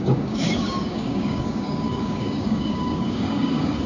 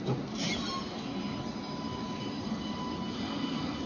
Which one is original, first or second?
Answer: second